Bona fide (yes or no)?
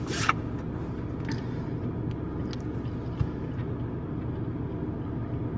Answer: yes